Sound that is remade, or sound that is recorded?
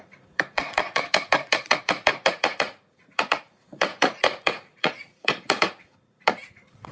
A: remade